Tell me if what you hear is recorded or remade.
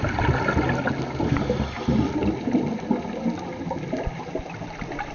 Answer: recorded